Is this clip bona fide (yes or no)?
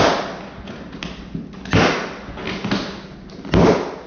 yes